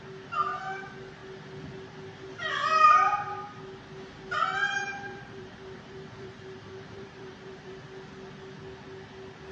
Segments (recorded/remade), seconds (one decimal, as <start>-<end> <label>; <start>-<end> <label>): 0.0-4.6 recorded; 4.6-7.7 remade; 7.7-9.5 recorded

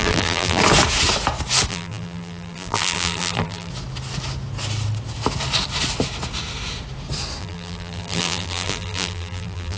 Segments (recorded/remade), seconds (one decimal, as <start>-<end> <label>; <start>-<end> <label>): 0.0-0.6 remade; 0.6-1.7 recorded; 1.7-3.7 remade; 3.7-7.4 recorded; 7.4-9.8 remade